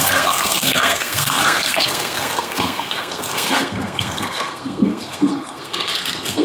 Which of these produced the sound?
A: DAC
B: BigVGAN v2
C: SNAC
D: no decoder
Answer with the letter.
C